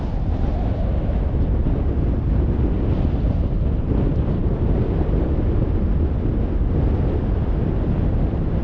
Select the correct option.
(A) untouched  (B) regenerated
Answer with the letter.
A